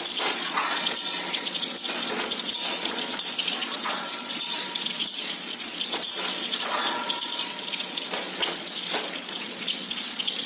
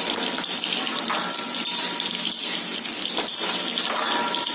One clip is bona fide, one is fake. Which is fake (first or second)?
first